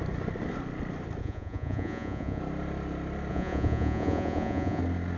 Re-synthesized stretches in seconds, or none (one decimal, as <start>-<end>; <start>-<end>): 1.2-2.4; 3.3-4.8

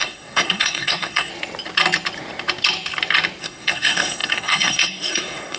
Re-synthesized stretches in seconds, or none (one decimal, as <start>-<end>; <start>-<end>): 0.0-1.3; 3.4-5.6

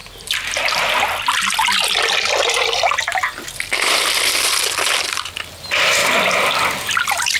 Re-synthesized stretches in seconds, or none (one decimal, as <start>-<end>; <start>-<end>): 6.0-6.9

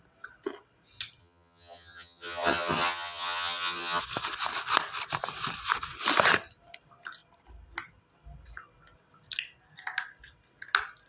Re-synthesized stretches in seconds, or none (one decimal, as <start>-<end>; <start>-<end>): 1.2-4.0

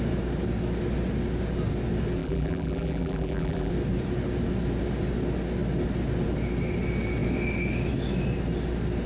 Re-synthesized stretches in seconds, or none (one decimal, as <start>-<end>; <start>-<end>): 2.2-3.7

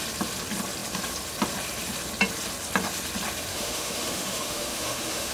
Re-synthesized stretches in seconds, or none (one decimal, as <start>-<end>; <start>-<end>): 3.5-5.3